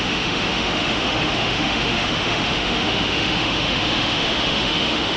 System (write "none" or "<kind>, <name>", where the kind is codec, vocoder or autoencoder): autoencoder, DAC-VAE